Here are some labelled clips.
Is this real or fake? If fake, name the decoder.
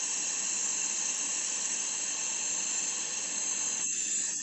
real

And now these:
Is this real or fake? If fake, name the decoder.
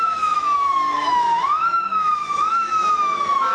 fake, autoencoder, DAC-VAE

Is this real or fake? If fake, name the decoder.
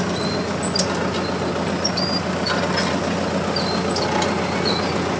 real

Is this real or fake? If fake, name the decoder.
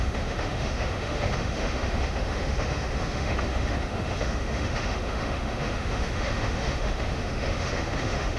fake, autoencoder, DAC-VAE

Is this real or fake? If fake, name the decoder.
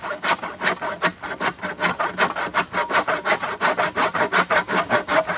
real